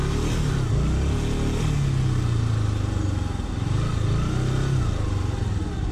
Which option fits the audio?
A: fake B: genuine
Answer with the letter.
B